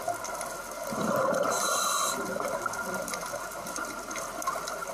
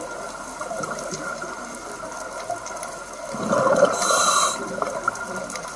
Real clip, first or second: first